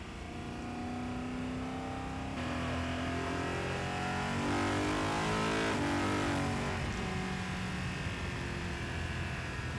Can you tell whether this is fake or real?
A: real